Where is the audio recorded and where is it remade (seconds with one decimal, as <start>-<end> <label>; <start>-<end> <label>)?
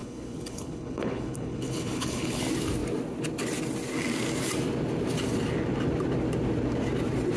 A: 0.0-2.4 remade; 2.4-7.4 recorded